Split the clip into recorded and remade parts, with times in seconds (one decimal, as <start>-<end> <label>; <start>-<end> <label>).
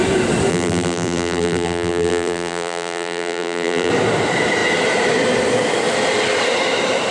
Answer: 0.0-0.5 recorded; 0.5-3.9 remade; 3.9-7.1 recorded